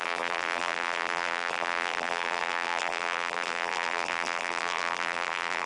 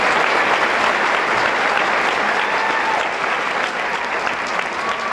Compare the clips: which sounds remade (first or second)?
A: first